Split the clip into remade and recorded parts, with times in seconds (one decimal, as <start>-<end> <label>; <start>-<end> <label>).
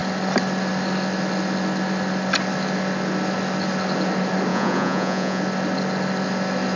0.0-4.5 recorded; 4.5-5.4 remade; 5.4-6.8 recorded